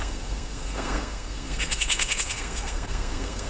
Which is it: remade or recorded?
remade